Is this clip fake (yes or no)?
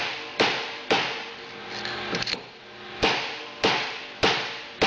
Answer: no